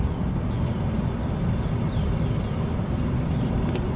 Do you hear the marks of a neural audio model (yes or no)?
no